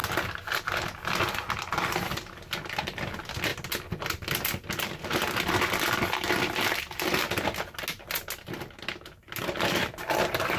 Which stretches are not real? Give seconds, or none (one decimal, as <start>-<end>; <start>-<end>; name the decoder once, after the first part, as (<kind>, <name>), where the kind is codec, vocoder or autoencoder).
none